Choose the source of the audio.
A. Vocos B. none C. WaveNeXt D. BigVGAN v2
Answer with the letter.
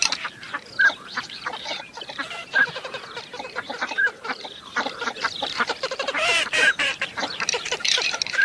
D